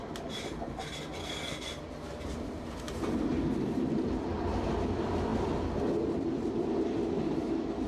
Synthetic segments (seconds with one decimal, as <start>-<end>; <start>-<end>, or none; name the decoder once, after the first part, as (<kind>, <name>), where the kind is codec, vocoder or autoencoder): 1.2-1.7 (codec, SNAC)